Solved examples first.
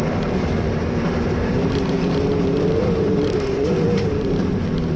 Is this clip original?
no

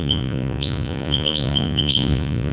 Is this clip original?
no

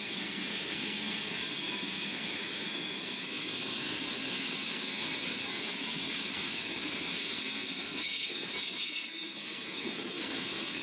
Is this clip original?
no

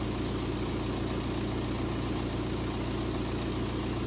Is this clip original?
yes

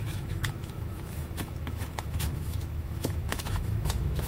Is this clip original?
no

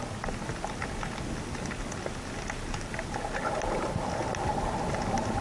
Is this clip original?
yes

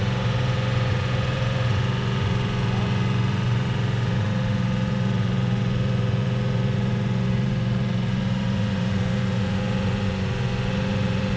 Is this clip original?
no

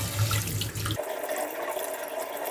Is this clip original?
yes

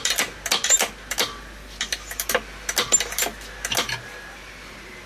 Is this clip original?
yes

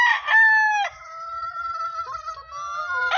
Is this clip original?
yes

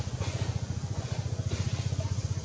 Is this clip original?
no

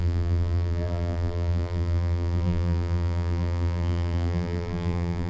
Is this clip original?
no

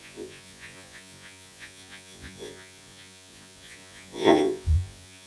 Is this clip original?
no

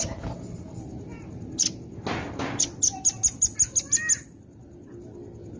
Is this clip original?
yes